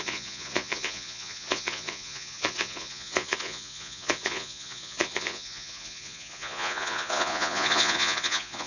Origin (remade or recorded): remade